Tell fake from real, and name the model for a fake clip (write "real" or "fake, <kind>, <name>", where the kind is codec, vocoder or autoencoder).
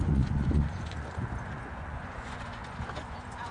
fake, vocoder, Vocos